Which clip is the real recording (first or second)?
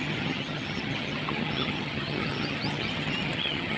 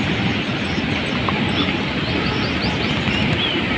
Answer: second